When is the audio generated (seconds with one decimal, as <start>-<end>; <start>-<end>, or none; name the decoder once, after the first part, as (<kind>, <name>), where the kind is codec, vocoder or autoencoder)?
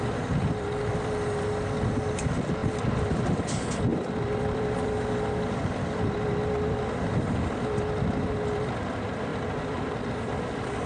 3.9-4.9 (vocoder, BigVGAN v2); 9.3-9.9